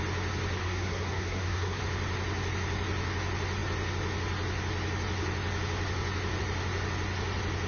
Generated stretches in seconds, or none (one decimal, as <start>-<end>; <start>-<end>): 0.6-1.8